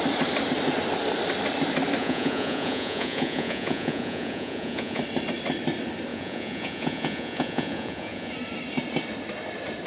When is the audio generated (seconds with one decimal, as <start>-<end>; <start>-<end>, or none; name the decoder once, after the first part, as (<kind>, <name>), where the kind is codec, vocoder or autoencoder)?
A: 2.0-5.0 (vocoder, Vocos); 6.1-8.3